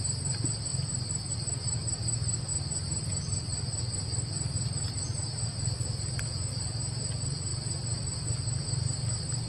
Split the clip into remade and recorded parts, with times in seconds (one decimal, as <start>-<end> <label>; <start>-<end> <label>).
0.0-0.7 recorded; 0.7-1.3 remade; 1.3-5.5 recorded; 5.5-6.5 remade; 6.5-9.5 recorded